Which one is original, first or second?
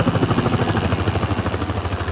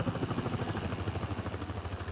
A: first